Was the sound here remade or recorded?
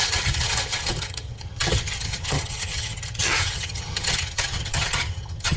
remade